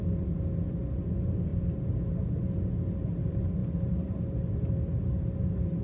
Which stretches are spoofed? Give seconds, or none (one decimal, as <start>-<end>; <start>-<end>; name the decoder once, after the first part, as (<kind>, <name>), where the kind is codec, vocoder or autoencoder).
none